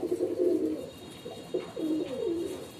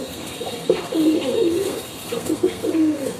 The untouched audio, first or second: first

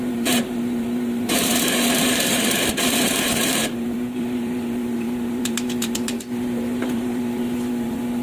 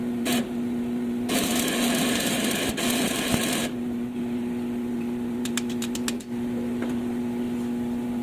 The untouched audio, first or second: second